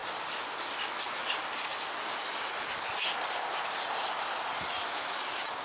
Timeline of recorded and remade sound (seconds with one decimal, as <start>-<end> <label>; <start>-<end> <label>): 0.0-4.8 recorded; 4.8-5.6 remade